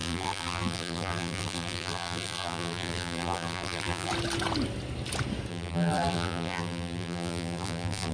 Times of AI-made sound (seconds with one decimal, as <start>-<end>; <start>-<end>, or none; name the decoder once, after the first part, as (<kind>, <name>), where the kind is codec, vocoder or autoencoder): 0.0-4.1 (vocoder, BigVGAN v2); 5.5-8.1

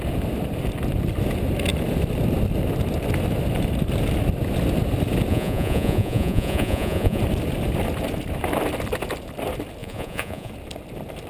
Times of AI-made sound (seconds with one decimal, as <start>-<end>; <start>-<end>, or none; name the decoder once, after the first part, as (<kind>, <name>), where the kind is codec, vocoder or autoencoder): 5.3-7.2 (vocoder, Vocos); 9.8-10.5